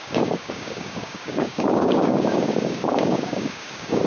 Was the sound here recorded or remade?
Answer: remade